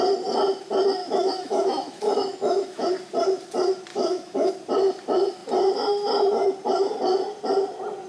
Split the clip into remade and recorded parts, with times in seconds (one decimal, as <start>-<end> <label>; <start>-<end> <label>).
0.0-1.0 recorded; 1.0-2.9 remade; 2.9-3.9 recorded; 3.9-4.5 remade; 4.5-8.1 recorded